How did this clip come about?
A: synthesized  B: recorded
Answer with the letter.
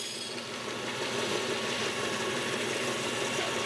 A